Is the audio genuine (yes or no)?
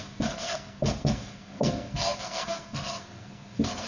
no